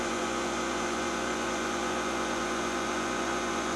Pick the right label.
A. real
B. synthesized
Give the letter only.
B